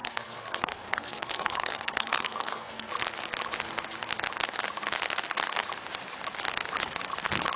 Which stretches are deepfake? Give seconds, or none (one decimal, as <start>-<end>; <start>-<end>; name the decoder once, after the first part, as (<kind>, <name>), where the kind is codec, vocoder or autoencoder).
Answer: 0.0-2.9 (codec, SNAC)